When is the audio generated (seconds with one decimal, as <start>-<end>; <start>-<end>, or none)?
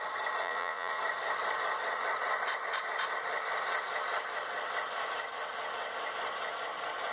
0.4-1.0